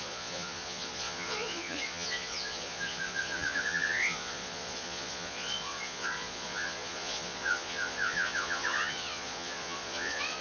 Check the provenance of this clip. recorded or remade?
remade